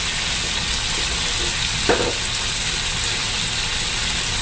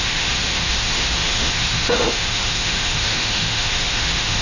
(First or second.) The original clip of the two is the first